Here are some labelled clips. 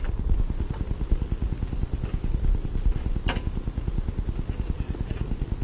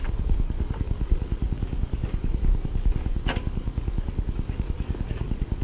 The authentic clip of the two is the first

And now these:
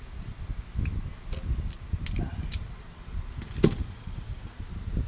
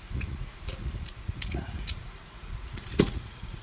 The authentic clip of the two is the first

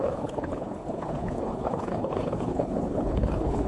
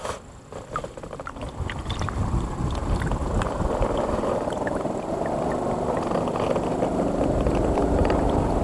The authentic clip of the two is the second